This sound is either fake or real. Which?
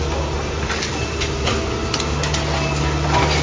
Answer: real